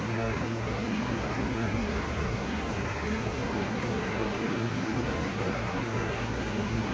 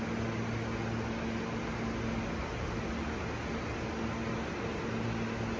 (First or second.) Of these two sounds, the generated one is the first